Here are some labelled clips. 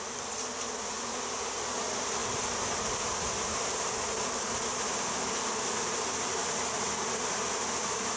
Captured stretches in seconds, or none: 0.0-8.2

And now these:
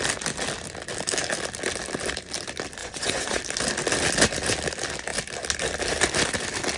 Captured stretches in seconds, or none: 0.0-2.8; 3.4-6.8

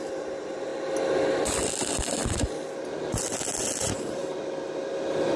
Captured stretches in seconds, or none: 0.7-3.8; 4.2-5.4

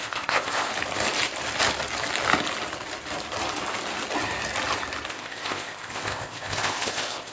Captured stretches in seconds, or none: 0.7-5.1

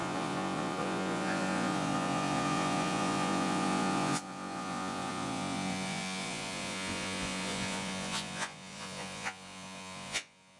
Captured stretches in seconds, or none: none